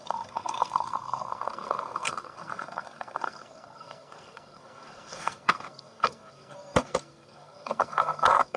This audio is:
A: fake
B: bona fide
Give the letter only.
A